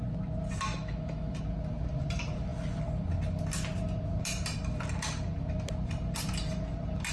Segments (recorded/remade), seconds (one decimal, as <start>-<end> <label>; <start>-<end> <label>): 0.0-0.7 recorded; 0.7-1.4 remade; 1.4-7.1 recorded